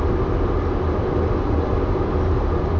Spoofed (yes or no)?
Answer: no